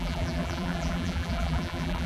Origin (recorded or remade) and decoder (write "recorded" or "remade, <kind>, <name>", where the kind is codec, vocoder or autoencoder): remade, vocoder, BigVGAN v2